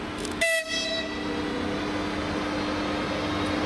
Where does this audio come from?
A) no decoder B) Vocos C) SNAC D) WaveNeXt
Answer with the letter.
A